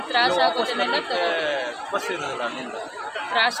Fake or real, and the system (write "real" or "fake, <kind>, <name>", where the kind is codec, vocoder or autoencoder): real